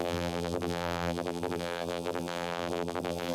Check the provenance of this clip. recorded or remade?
remade